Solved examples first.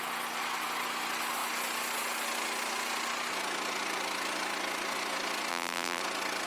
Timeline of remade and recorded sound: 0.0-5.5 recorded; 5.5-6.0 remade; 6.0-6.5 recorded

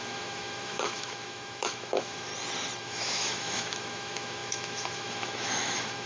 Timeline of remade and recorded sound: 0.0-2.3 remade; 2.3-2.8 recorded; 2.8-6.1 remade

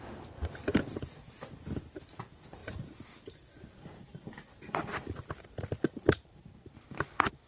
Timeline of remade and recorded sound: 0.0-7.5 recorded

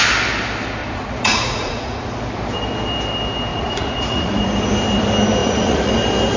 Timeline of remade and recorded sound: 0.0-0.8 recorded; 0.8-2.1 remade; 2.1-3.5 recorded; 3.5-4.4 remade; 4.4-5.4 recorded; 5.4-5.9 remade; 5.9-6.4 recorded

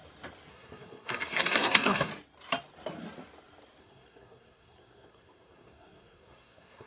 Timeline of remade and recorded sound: 0.0-0.5 recorded; 0.5-2.1 remade; 2.1-3.8 recorded; 3.8-6.9 remade

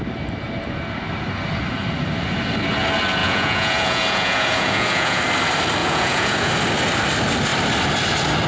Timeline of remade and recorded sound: 0.0-3.2 recorded; 3.2-5.2 remade; 5.2-5.8 recorded; 5.8-6.5 remade; 6.5-8.5 recorded

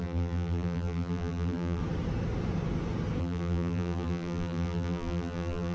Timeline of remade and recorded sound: 0.0-1.8 remade; 1.8-3.2 recorded; 3.2-5.7 remade

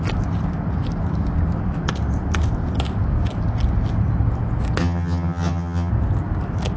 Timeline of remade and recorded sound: 0.0-4.8 recorded; 4.8-5.9 remade; 5.9-6.8 recorded